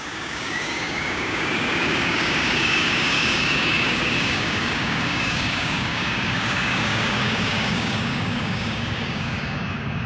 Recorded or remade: remade